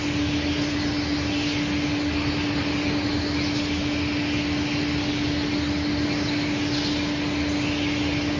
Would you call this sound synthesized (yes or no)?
no